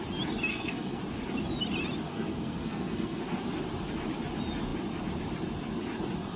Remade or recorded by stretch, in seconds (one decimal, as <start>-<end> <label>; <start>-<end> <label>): 0.0-0.5 recorded; 0.5-1.0 remade; 1.0-2.1 recorded; 2.1-3.2 remade; 3.2-6.4 recorded